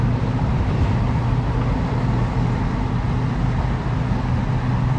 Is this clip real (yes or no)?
yes